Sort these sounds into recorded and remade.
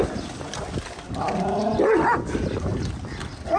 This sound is recorded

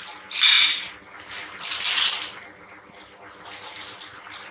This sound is recorded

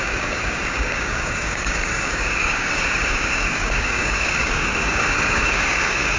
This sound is remade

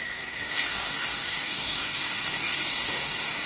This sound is remade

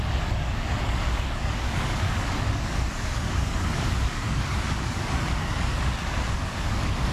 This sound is remade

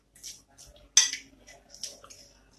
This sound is recorded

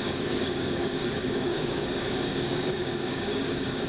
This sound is remade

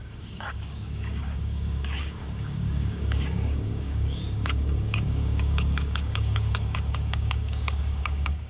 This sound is remade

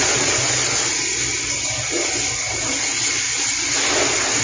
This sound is recorded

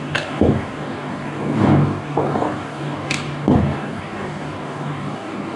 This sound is remade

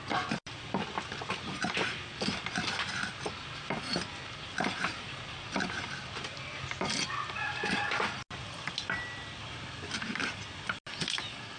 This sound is recorded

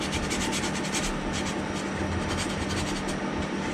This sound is recorded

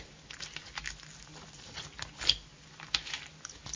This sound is recorded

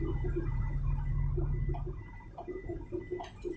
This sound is recorded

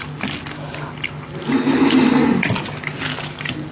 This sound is recorded